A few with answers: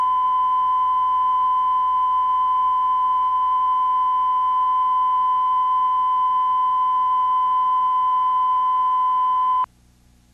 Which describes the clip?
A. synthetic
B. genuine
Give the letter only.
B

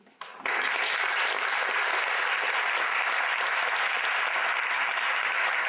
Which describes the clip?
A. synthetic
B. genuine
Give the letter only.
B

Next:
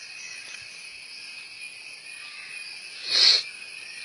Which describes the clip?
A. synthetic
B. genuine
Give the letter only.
B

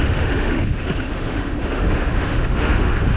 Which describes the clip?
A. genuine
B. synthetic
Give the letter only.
B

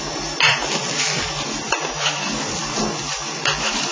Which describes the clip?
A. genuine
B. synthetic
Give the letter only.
A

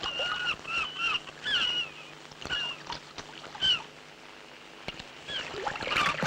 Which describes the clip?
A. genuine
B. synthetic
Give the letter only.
A